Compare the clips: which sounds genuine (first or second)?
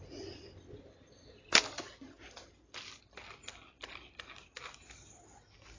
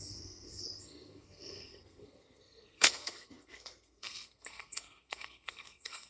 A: first